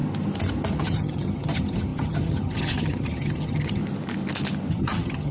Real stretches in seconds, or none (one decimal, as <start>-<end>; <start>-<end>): 0.0-0.8; 3.8-4.7